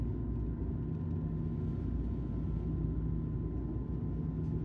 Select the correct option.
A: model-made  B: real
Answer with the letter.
B